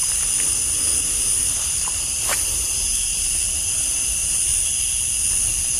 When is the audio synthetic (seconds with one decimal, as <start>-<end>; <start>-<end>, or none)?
none